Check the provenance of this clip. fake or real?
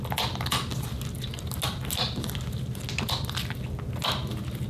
real